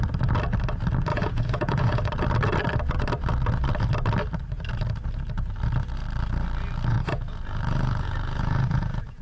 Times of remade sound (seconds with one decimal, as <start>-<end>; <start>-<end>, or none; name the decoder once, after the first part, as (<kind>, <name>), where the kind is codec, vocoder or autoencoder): 1.1-2.1 (vocoder, Vocos); 6.9-9.2